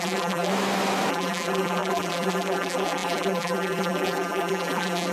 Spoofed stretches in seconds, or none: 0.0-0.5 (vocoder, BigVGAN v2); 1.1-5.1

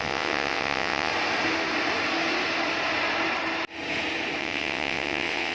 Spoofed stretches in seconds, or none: 0.0-1.1 (vocoder, WaveNeXt); 4.4-5.5

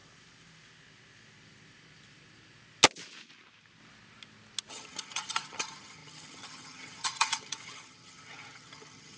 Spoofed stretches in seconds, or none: 4.7-9.2 (vocoder, HiFi-GAN)

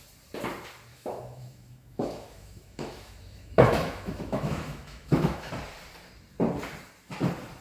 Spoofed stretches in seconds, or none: 0.9-5.5 (autoencoder, DAC-VAE)

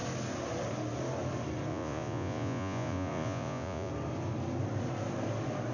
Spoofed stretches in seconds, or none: 1.7-3.9 (vocoder, Vocos)